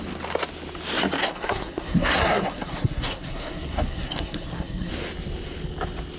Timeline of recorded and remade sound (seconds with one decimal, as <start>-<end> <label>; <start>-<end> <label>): 0.0-1.2 recorded; 1.2-4.9 remade; 4.9-6.2 recorded